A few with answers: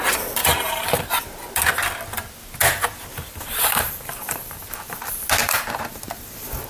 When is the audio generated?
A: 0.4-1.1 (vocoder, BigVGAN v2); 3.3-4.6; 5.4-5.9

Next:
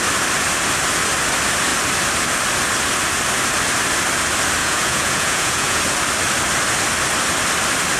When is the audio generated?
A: 4.6-5.8 (vocoder, Vocos)

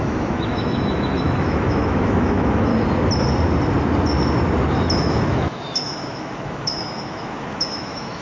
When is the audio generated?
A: 0.0-2.7 (autoencoder, DAC-VAE); 5.0-8.2

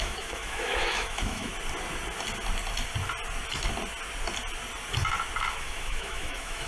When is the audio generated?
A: 0.0-1.5 (autoencoder, DAC-VAE); 5.5-6.7

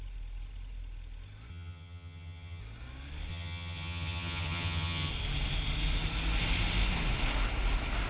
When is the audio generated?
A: 1.5-2.6 (vocoder, HiFi-GAN); 3.3-5.1

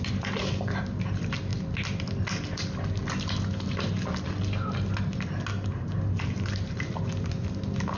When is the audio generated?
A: none